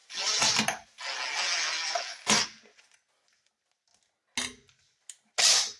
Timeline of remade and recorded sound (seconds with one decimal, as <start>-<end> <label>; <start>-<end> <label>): 0.0-5.8 recorded